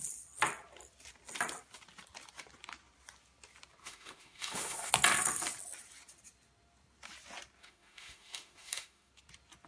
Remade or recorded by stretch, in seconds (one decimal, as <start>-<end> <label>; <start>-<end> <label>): 0.0-3.8 recorded; 3.8-4.9 remade; 4.9-7.6 recorded; 7.6-9.1 remade; 9.1-9.7 recorded